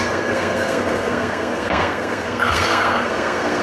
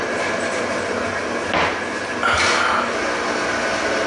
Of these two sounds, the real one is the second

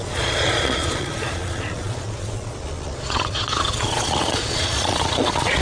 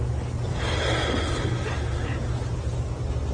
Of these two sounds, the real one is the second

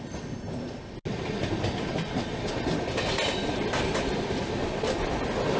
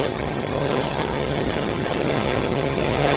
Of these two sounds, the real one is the first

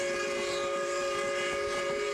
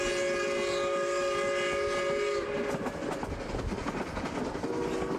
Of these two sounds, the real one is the second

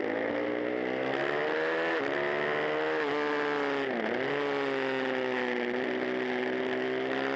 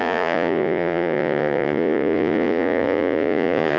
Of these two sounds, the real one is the first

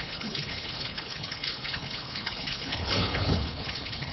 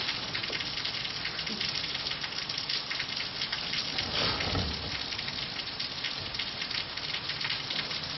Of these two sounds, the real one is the second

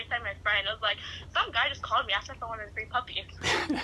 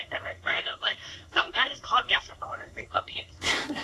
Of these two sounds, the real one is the first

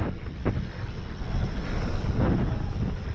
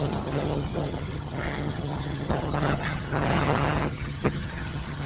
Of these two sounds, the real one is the first